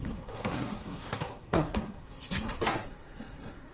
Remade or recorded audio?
remade